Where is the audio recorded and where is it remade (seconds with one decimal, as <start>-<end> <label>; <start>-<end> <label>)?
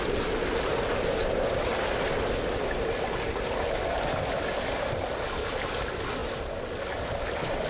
0.0-7.7 recorded